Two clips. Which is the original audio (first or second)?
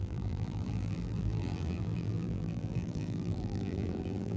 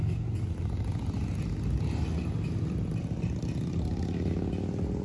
second